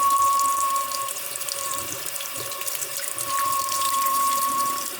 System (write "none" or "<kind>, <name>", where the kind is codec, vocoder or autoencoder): vocoder, BigVGAN v2